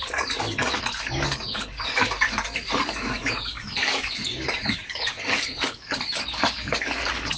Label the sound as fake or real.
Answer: fake